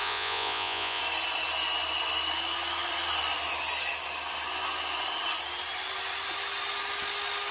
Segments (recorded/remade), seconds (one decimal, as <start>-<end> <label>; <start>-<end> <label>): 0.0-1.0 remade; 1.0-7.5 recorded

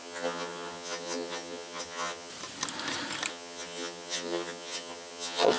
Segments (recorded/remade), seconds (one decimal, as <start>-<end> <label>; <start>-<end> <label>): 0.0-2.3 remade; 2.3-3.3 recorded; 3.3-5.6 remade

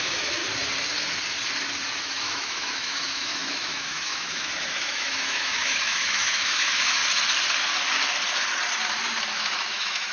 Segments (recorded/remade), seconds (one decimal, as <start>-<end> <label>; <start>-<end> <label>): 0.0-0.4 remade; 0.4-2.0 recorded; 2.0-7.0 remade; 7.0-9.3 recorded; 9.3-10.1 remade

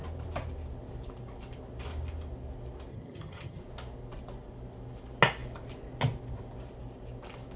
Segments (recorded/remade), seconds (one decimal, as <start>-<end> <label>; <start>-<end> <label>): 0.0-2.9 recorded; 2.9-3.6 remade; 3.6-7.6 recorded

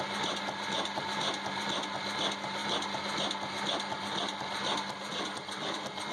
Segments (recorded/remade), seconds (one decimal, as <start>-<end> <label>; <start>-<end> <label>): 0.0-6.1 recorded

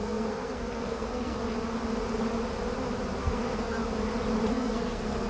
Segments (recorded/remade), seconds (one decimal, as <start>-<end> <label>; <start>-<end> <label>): 0.0-1.4 remade; 1.4-3.2 recorded; 3.2-3.8 remade; 3.8-4.5 recorded; 4.5-5.3 remade